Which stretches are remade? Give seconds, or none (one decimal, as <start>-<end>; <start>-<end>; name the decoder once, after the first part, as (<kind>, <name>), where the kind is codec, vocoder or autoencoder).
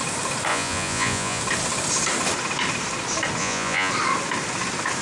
0.5-1.4 (vocoder, Vocos); 3.4-3.9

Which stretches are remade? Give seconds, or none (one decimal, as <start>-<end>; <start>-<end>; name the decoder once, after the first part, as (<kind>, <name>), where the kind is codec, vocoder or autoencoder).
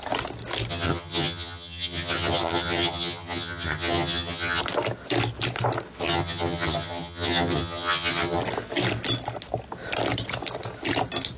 0.7-4.6 (vocoder, HiFi-GAN); 6.0-8.4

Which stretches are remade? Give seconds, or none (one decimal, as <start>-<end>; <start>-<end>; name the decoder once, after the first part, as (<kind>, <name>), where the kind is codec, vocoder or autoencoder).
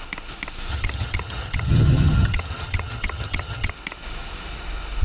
0.7-3.7 (vocoder, HiFi-GAN)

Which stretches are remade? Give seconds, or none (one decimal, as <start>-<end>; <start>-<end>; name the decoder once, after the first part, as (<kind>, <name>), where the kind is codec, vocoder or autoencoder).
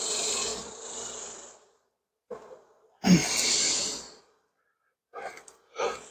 0.5-2.1 (vocoder, BigVGAN v2); 3.2-4.6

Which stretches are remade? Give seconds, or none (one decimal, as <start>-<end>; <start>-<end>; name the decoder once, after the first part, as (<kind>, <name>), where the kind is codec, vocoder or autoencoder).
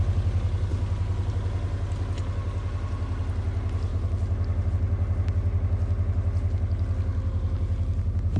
none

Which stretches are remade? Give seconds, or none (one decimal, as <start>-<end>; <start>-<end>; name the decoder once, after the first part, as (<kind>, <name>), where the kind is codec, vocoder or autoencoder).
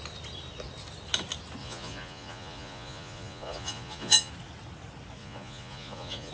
1.6-4.3 (vocoder, Vocos); 5.2-6.3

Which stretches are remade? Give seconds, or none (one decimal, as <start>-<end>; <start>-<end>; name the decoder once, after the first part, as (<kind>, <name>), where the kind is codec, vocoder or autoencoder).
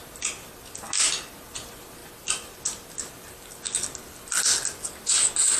none